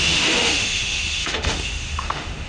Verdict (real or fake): fake